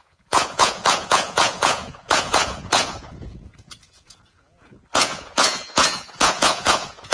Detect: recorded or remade remade